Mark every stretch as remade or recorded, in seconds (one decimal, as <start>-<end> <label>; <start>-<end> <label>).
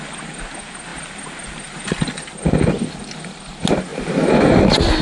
0.0-5.0 recorded